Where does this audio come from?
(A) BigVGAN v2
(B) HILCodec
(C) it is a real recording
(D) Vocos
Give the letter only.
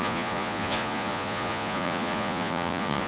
D